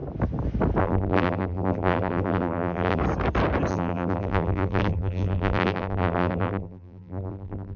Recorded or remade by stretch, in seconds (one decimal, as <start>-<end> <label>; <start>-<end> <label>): 0.0-0.8 recorded; 0.8-3.0 remade; 3.0-3.7 recorded; 3.7-7.8 remade